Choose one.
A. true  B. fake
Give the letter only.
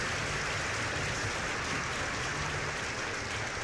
A